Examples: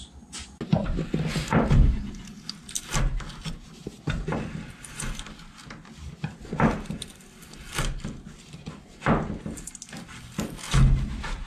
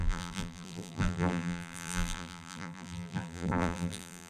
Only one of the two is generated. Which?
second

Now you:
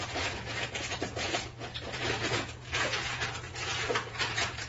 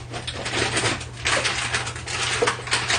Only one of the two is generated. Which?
first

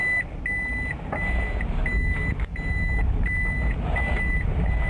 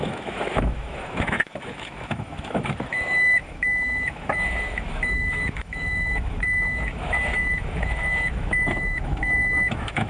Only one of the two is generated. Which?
second